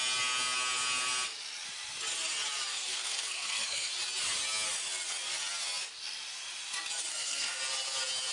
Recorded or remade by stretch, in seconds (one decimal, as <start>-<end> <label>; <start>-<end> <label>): 0.0-2.7 recorded; 2.7-3.9 remade; 3.9-7.1 recorded; 7.1-7.6 remade; 7.6-8.3 recorded

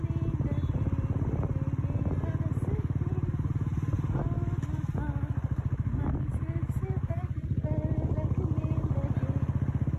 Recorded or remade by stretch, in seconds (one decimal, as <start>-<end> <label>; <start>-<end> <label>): 0.0-10.0 recorded

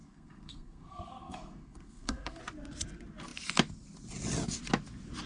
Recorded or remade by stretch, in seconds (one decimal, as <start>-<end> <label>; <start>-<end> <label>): 0.0-2.4 remade; 2.4-5.3 recorded

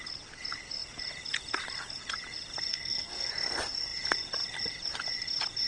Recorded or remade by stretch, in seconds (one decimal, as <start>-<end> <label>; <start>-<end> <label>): 0.0-2.7 recorded; 2.7-3.3 remade; 3.3-5.7 recorded

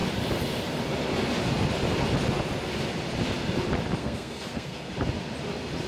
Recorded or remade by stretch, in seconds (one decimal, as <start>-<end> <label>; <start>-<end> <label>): 0.0-4.0 recorded; 4.0-4.9 remade; 4.9-5.9 recorded

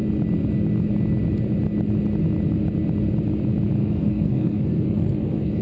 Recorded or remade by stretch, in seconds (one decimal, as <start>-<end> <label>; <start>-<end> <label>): 0.0-3.8 recorded; 3.8-5.6 remade

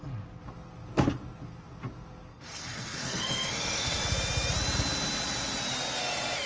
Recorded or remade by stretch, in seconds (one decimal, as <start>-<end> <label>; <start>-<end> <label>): 0.0-2.3 recorded; 2.3-4.0 remade; 4.0-6.5 recorded